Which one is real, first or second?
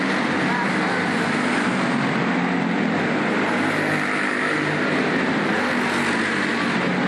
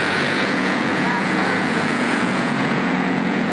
first